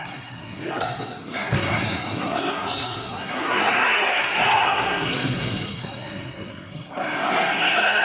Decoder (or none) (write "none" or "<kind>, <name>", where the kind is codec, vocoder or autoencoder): codec, SNAC